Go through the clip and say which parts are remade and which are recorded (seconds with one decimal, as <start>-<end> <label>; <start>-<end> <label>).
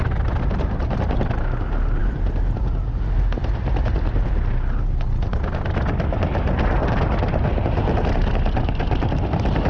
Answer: 0.0-9.7 recorded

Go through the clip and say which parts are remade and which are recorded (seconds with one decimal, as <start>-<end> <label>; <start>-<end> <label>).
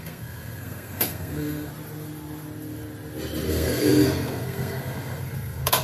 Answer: 0.0-1.7 remade; 1.7-3.5 recorded; 3.5-5.8 remade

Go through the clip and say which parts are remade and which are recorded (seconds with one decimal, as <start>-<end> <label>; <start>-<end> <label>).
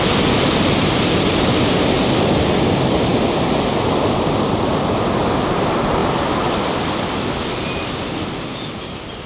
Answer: 0.0-9.3 recorded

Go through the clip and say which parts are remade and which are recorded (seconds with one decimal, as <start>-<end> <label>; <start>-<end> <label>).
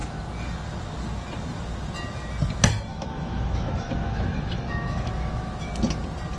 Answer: 0.0-2.9 recorded; 2.9-5.7 remade; 5.7-6.4 recorded